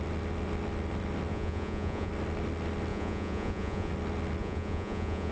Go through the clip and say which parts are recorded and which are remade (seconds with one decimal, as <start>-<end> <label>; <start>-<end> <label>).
0.0-1.3 recorded; 1.3-2.1 remade; 2.1-2.9 recorded; 2.9-3.9 remade; 3.9-4.4 recorded; 4.4-5.3 remade